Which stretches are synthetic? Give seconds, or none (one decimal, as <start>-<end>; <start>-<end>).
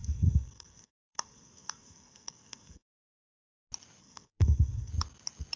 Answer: 0.0-3.4; 4.0-4.9